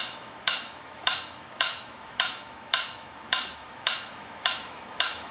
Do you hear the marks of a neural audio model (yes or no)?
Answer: yes